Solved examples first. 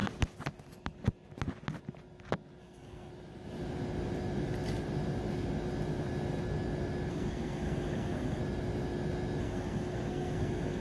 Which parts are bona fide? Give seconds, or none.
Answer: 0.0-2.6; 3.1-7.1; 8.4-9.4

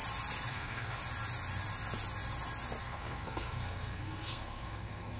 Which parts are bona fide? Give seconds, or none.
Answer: 0.0-0.5; 1.0-2.8

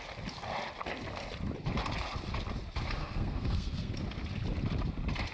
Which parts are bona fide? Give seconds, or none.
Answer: 0.0-3.0; 3.9-5.3

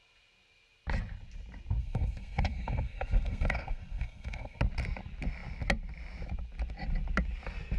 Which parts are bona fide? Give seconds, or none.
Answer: 0.0-1.8; 4.6-7.8

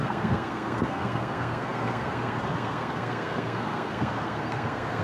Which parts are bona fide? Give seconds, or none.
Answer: none